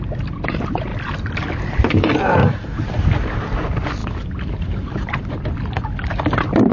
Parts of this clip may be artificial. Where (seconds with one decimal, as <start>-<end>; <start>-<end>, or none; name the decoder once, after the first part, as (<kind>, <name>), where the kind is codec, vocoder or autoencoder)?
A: 2.4-3.4 (vocoder, BigVGAN v2); 4.0-5.4